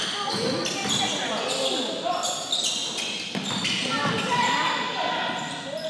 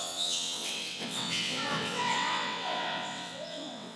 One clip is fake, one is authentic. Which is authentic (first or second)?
first